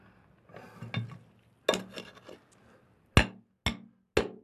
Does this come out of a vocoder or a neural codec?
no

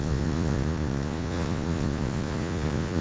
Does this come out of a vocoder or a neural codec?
yes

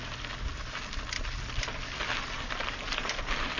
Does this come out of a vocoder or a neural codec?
no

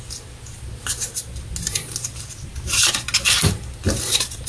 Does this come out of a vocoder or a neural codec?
no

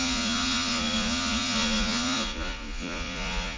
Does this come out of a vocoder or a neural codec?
yes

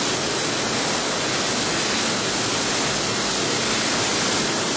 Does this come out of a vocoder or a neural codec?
no